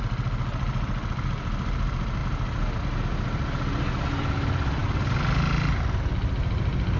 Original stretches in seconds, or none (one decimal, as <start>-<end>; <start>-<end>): 0.0-7.0